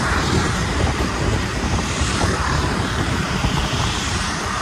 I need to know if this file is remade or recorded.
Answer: remade